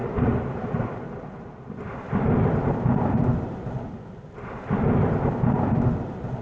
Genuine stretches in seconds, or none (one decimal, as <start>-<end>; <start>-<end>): 0.0-6.4